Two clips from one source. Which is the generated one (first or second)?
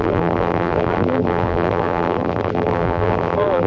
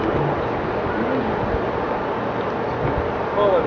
first